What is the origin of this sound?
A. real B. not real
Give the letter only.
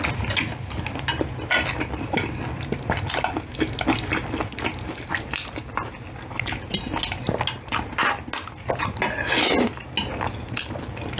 A